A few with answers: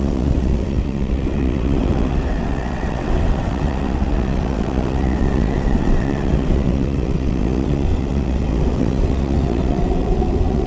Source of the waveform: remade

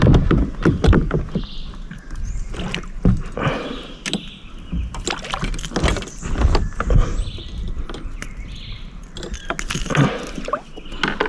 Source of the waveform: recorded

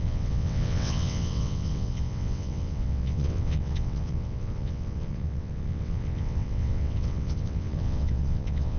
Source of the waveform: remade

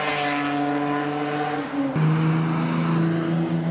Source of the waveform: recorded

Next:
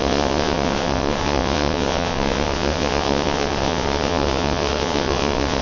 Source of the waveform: remade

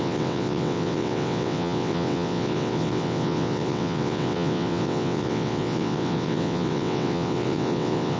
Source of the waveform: remade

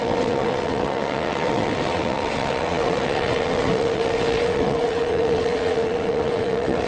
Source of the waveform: remade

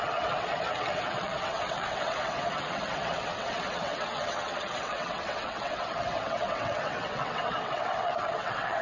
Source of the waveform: remade